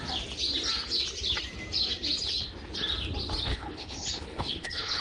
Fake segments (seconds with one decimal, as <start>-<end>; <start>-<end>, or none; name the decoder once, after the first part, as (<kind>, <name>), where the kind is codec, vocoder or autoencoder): 3.5-5.0 (codec, HILCodec)